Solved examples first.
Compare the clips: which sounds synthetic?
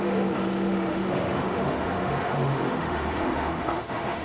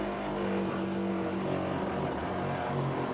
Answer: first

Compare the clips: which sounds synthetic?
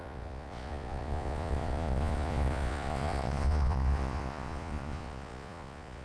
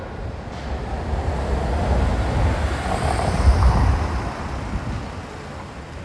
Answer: first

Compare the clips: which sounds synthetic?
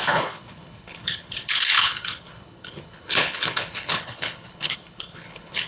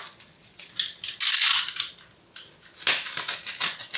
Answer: first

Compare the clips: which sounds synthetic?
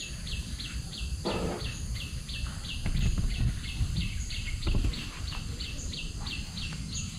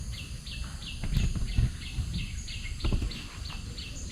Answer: first